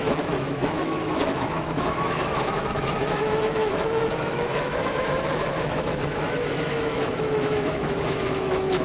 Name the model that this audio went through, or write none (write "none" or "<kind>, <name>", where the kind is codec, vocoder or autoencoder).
autoencoder, DAC-VAE